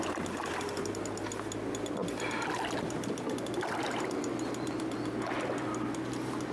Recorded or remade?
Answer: recorded